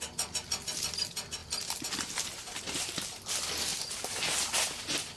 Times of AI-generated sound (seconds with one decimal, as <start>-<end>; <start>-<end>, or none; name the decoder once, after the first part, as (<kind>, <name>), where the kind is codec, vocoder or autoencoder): none